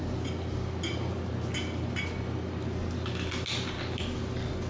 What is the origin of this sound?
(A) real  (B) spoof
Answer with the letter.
A